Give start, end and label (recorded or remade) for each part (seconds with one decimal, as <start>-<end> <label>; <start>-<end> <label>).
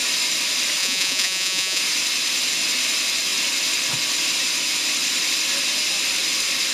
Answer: 0.0-0.8 recorded; 0.8-1.8 remade; 1.8-6.7 recorded